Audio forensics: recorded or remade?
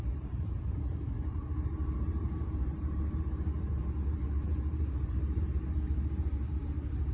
remade